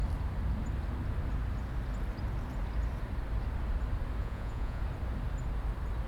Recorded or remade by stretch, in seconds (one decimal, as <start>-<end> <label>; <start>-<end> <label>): 0.0-4.2 recorded; 4.2-4.8 remade; 4.8-6.1 recorded